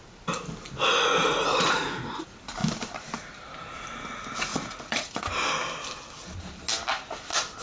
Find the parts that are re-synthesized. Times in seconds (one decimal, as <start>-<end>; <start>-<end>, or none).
1.2-2.1; 4.5-5.2

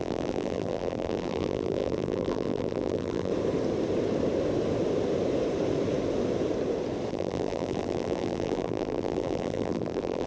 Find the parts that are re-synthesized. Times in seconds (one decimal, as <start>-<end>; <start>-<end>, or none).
0.0-3.3; 7.1-10.3